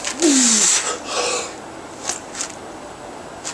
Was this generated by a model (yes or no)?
no